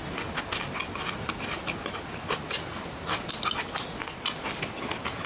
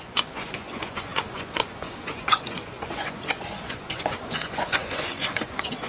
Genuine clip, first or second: first